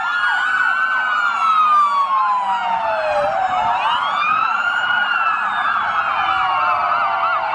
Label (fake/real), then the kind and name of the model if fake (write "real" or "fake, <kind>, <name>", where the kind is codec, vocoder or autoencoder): real